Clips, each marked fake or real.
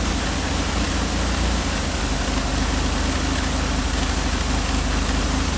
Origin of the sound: real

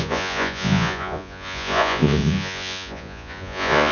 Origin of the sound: fake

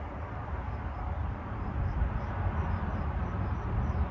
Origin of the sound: real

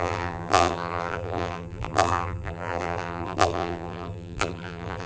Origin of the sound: fake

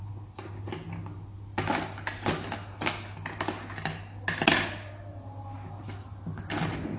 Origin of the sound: real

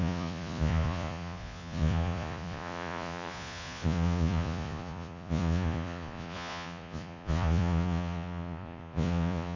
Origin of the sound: fake